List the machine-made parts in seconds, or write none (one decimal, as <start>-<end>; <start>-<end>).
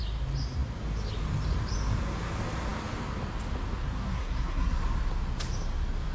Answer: 3.8-4.8